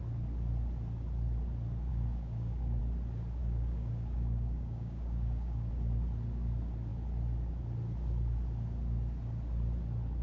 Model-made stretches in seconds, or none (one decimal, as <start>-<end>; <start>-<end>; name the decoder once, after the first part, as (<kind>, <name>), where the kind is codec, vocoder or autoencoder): 1.9-2.8 (codec, DAC); 3.4-5.7